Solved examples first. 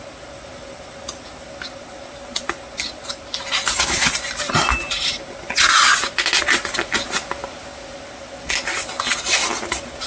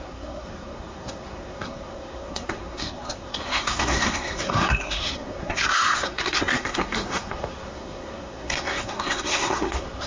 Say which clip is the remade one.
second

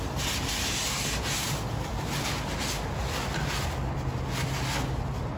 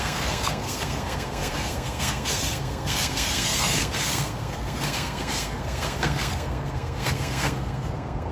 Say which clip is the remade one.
second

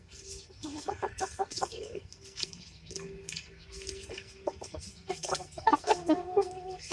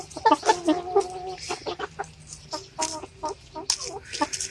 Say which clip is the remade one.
first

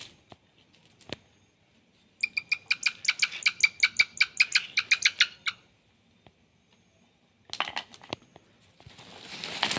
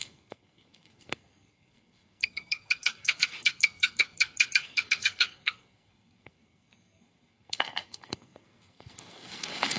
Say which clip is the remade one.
second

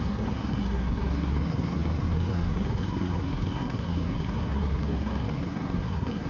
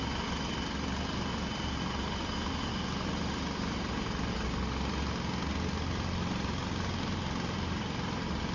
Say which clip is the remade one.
first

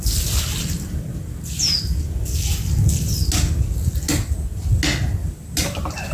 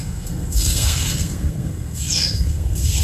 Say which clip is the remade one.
second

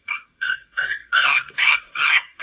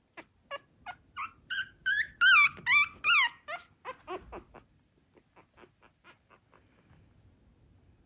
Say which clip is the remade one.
first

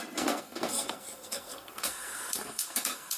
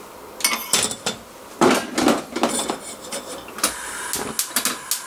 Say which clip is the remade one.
first